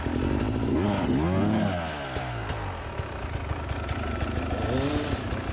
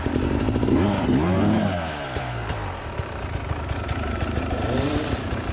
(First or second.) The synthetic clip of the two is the second